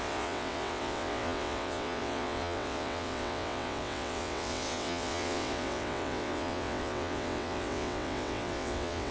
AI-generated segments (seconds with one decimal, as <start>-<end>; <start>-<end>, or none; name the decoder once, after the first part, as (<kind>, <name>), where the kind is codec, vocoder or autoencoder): 0.0-9.1 (vocoder, WaveNeXt)